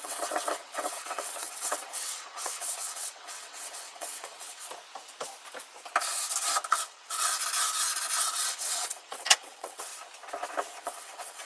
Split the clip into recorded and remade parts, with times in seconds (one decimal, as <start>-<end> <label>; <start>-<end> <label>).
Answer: 0.0-4.6 remade; 4.6-6.7 recorded; 6.7-7.4 remade; 7.4-8.2 recorded; 8.2-9.9 remade; 9.9-10.8 recorded; 10.8-11.5 remade